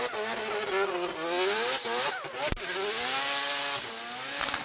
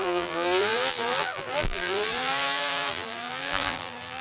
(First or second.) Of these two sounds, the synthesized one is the second